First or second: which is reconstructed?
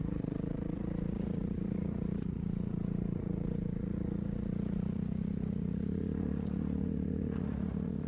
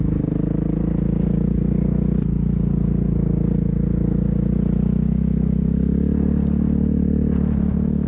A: first